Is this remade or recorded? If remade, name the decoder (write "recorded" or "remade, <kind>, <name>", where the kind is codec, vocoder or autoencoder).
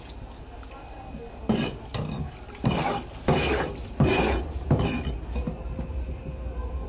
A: recorded